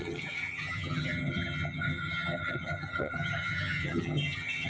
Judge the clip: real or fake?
fake